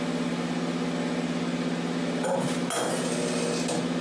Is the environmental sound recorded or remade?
recorded